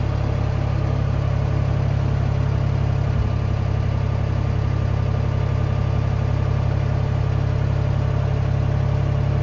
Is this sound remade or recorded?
recorded